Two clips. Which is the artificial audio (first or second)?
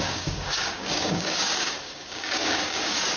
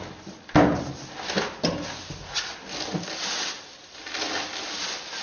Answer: first